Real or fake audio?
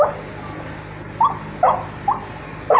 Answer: real